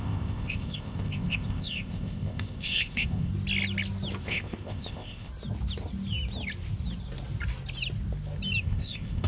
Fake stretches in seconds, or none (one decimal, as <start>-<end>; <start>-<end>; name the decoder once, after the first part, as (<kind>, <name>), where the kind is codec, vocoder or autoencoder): 0.0-3.3 (codec, ZipCodec); 4.2-5.3; 8.6-9.3